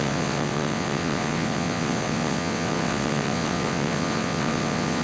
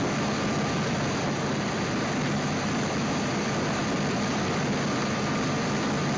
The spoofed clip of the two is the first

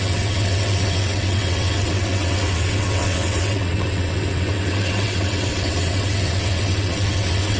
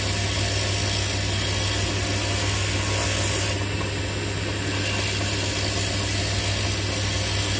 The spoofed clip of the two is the first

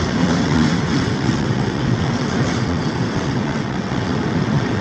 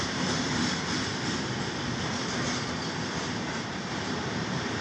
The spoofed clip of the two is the first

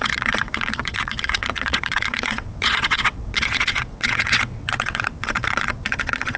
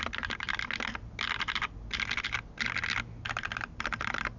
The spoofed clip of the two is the first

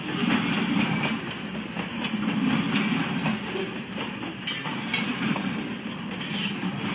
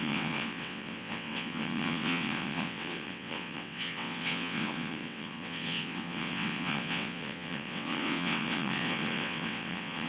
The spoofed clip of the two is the second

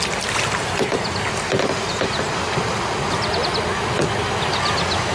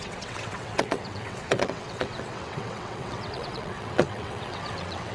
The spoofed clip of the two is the second